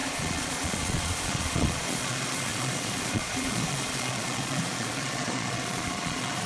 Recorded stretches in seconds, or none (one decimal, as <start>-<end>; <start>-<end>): none